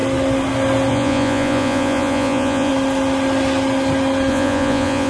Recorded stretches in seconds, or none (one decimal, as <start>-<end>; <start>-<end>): 0.0-0.9; 2.7-4.3